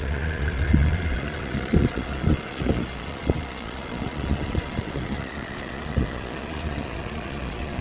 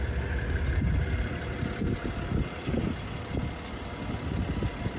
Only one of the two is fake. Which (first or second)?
first